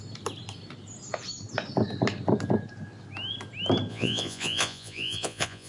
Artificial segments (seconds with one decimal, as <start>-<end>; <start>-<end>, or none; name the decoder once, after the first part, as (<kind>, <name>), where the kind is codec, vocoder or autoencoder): 3.9-5.7 (vocoder, Vocos)